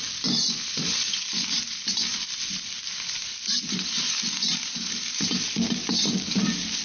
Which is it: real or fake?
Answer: real